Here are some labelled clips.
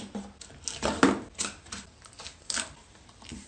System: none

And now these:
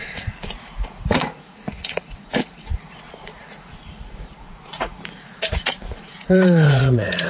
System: vocoder, Vocos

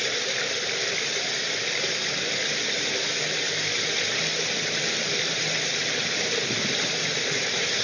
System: vocoder, BigVGAN v2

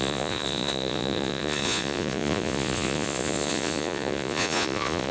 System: vocoder, Vocos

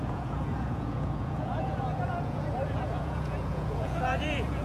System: vocoder, Vocos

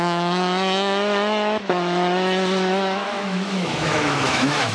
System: autoencoder, DAC-VAE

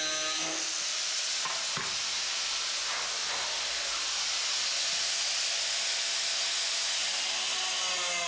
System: none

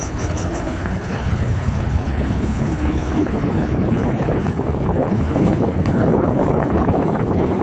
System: codec, HILCodec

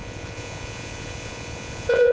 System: vocoder, Vocos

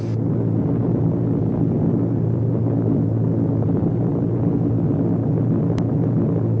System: none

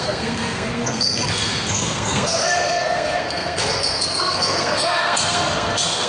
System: codec, SNAC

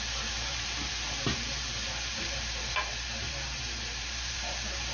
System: vocoder, BigVGAN v2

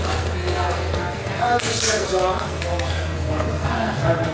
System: codec, SNAC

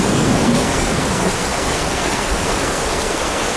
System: codec, SNAC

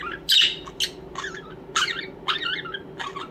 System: none